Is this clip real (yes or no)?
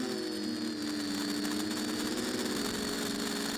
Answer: yes